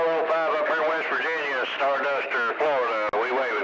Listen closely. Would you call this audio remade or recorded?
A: recorded